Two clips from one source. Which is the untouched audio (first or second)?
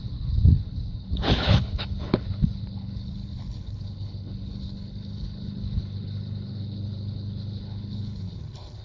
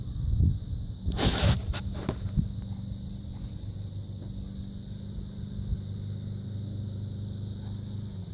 second